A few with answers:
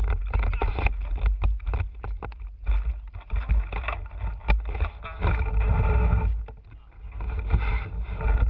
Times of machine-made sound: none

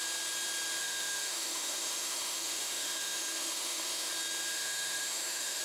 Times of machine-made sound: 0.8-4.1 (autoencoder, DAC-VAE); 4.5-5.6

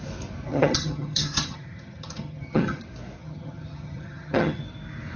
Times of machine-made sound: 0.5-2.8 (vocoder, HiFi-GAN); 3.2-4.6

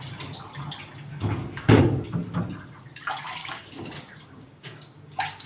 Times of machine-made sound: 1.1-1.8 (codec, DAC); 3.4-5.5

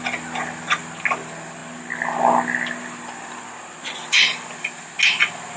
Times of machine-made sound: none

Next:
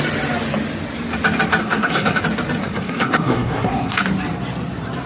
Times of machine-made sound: 1.6-2.2 (codec, SNAC); 2.6-4.0

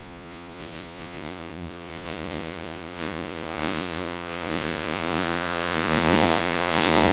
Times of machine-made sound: 0.0-7.1 (vocoder, Vocos)